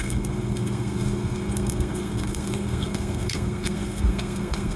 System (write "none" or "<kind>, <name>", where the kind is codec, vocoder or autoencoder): codec, SNAC